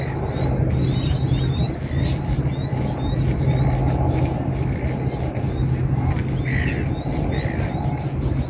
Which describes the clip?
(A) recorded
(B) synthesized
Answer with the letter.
A